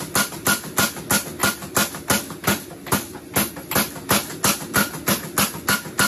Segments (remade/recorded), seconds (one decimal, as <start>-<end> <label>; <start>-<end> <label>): 0.0-6.1 recorded